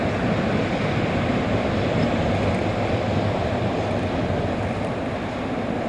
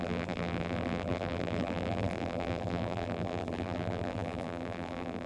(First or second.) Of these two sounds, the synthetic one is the second